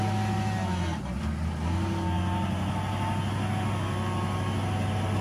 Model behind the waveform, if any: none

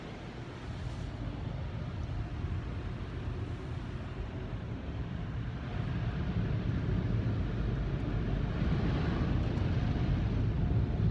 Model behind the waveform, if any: none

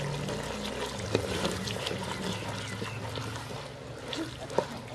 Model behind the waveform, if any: none